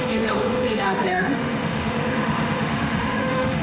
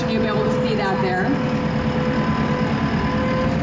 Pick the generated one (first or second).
first